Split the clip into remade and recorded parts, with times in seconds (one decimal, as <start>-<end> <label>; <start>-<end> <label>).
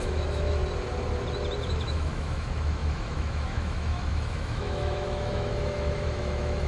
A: 0.0-0.6 remade; 0.6-1.7 recorded; 1.7-6.7 remade